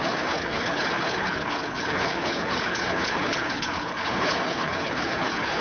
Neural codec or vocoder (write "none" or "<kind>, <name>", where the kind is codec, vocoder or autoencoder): codec, HILCodec